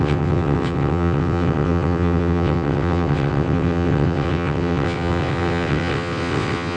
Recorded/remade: remade